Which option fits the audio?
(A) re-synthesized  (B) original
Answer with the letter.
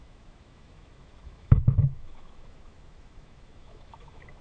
A